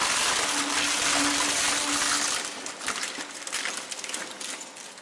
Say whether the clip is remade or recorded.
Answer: recorded